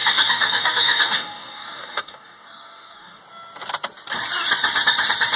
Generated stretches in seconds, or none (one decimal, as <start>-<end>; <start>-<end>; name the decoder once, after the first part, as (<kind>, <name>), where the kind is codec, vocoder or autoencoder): 0.0-3.2 (codec, DAC)